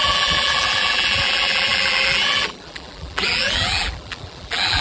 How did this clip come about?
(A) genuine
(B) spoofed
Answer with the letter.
B